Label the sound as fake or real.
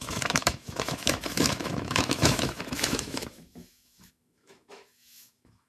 fake